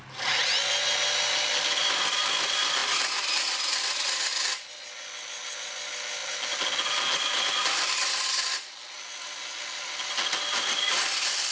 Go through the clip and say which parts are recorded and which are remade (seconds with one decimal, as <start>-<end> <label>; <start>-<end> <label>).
0.0-11.5 recorded